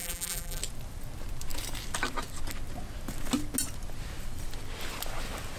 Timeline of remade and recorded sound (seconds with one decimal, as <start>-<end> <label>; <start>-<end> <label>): 0.0-0.6 remade; 0.6-5.6 recorded